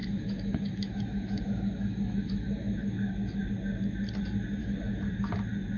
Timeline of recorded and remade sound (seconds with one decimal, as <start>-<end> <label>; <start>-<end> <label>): 0.0-3.5 remade; 3.5-4.6 recorded; 4.6-5.3 remade; 5.3-5.8 recorded